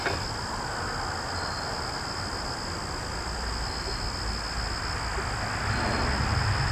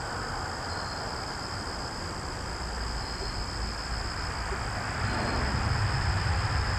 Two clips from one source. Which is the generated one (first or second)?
second